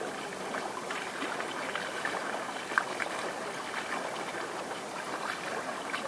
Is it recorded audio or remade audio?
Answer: recorded